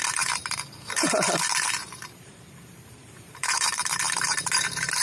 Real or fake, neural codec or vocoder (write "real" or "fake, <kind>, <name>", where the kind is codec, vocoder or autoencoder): fake, vocoder, BigVGAN v2